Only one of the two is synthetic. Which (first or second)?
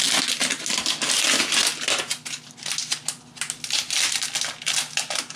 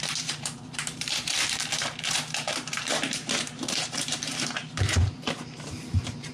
second